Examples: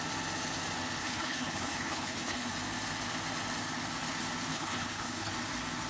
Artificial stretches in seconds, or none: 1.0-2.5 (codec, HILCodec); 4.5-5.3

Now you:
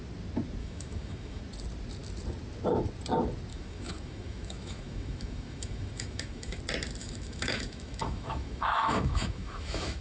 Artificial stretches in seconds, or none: 0.6-1.4 (autoencoder, DAC-VAE); 3.5-6.6; 7.0-10.0

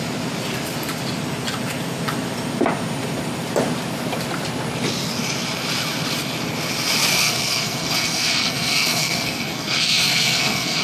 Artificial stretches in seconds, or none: 7.1-10.8 (codec, SNAC)

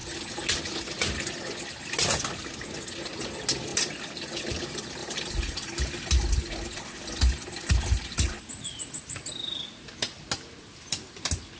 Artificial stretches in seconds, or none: 5.0-6.1 (vocoder, BigVGAN v2)